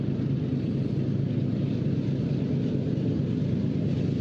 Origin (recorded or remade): recorded